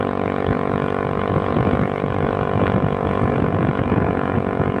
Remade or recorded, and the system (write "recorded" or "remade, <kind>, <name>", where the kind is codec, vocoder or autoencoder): remade, vocoder, Vocos